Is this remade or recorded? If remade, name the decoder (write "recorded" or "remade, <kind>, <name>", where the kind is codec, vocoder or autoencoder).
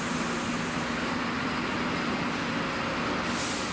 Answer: recorded